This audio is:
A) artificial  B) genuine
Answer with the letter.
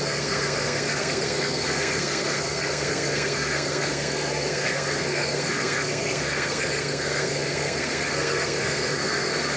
A